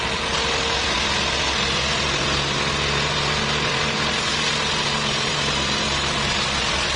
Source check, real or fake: real